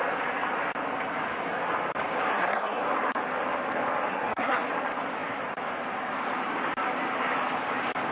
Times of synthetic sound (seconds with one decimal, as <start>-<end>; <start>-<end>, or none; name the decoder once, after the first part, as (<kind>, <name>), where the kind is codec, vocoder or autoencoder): 2.3-2.8 (codec, SNAC); 4.1-4.7